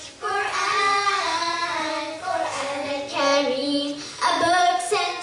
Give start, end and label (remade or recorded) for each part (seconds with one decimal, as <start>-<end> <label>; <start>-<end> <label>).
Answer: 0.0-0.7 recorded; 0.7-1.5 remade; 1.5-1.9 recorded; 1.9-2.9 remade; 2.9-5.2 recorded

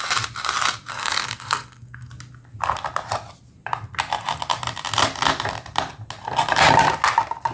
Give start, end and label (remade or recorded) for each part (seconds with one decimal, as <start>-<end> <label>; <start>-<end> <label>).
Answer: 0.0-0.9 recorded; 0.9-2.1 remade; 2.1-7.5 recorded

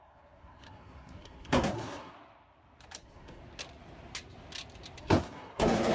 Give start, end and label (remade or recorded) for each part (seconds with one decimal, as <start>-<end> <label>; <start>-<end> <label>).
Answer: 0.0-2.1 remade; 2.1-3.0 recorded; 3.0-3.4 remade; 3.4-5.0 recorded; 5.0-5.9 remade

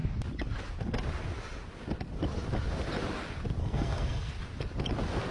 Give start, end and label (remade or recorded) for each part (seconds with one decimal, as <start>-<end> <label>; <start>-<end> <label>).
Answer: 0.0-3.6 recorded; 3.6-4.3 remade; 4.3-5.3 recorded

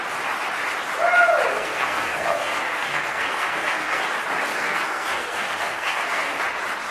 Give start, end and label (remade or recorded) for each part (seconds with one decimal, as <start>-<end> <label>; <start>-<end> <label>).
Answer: 0.0-1.5 recorded; 1.5-4.0 remade; 4.0-4.5 recorded; 4.5-6.4 remade; 6.4-6.9 recorded

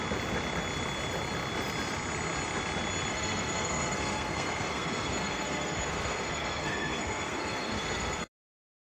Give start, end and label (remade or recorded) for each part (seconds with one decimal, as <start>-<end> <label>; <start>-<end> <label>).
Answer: 0.0-3.1 recorded; 3.1-8.2 remade; 8.2-9.0 recorded

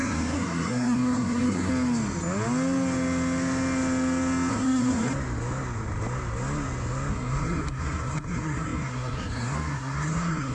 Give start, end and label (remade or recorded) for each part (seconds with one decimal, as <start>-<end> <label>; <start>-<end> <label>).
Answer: 0.0-1.7 remade; 1.7-4.5 recorded; 4.5-5.1 remade; 5.1-7.1 recorded; 7.1-10.5 remade